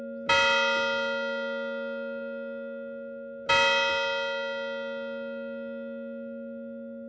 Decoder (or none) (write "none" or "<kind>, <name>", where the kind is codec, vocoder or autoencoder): none